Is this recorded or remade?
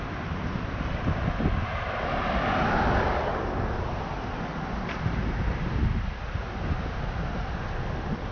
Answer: recorded